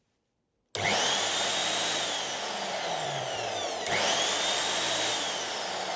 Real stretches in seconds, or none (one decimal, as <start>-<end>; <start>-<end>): 0.0-6.0